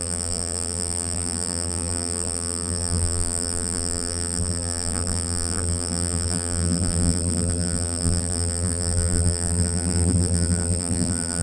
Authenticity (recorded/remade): remade